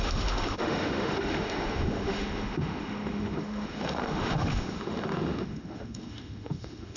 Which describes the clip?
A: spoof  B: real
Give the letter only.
A